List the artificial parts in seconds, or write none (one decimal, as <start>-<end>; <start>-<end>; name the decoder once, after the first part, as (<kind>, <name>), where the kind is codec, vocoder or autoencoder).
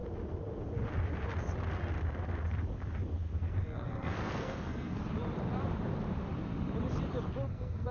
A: 3.4-5.0 (codec, SNAC); 7.5-7.9